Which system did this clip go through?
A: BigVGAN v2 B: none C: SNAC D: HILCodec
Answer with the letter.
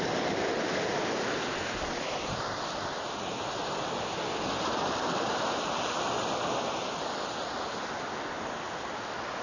B